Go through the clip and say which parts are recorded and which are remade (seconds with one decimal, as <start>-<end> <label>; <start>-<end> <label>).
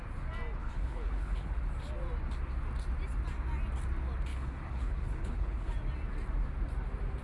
0.0-0.6 recorded; 0.6-1.6 remade; 1.6-4.3 recorded; 4.3-5.7 remade; 5.7-7.2 recorded